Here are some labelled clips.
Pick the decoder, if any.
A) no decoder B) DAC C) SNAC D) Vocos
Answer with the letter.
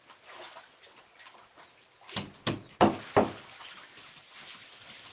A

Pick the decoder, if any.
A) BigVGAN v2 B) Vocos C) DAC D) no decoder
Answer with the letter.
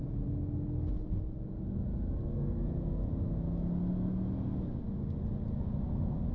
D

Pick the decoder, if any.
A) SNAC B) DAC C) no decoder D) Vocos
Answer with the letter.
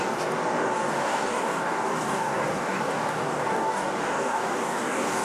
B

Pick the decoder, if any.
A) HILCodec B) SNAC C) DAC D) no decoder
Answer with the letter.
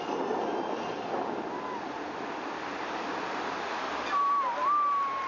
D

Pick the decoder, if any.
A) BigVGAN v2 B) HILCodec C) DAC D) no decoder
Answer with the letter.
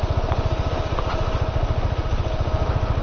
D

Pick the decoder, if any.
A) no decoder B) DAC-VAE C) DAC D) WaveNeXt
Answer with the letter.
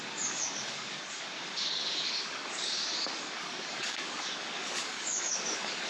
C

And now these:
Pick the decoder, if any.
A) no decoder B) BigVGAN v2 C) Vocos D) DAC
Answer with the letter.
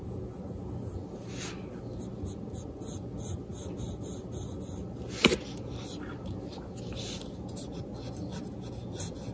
A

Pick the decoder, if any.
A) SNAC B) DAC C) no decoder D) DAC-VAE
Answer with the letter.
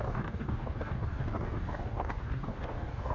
B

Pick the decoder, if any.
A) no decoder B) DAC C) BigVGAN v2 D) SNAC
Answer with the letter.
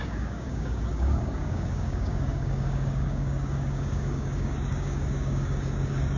B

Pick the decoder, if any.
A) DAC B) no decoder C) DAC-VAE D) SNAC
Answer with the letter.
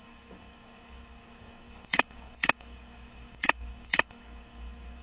A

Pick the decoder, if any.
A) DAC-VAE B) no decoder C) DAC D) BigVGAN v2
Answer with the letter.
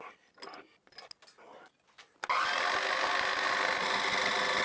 B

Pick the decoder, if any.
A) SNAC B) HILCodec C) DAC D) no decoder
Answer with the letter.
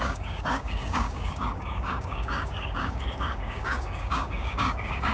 C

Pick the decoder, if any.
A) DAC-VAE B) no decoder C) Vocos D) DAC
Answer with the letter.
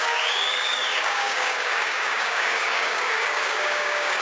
D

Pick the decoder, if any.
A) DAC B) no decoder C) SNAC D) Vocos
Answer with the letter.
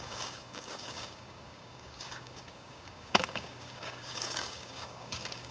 A